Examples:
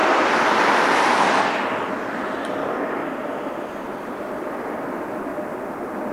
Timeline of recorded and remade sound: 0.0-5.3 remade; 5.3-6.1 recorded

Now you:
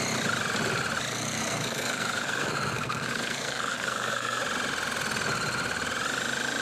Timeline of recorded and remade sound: 0.0-1.1 recorded; 1.1-4.4 remade; 4.4-6.6 recorded

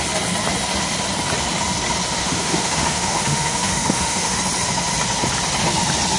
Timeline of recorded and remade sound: 0.0-2.2 recorded; 2.2-4.4 remade; 4.4-6.2 recorded

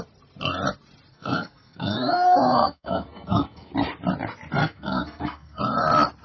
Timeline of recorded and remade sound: 0.0-1.1 recorded; 1.1-3.7 remade; 3.7-4.6 recorded; 4.6-5.6 remade; 5.6-6.2 recorded